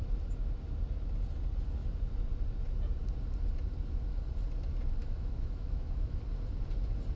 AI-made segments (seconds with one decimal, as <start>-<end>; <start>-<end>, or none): 5.0-6.2